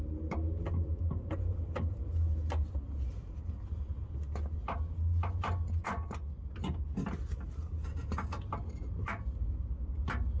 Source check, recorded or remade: recorded